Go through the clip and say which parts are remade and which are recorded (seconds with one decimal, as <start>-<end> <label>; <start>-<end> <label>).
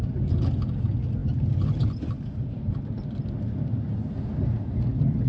0.0-1.2 remade; 1.2-4.4 recorded; 4.4-5.3 remade